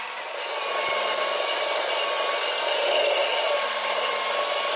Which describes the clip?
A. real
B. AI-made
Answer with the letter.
A